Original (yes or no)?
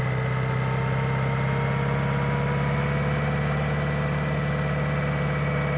yes